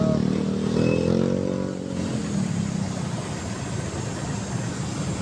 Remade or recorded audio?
recorded